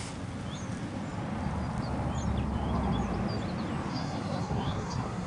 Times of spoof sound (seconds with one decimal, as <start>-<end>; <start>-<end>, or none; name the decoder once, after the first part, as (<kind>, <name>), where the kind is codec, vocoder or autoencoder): 3.9-5.3 (codec, SNAC)